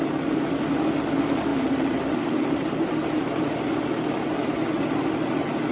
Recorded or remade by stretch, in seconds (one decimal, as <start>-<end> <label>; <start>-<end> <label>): 0.0-1.5 recorded; 1.5-4.9 remade; 4.9-5.7 recorded